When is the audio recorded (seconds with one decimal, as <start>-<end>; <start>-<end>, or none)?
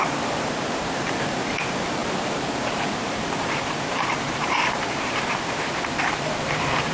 none